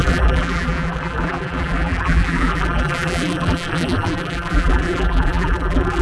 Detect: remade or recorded remade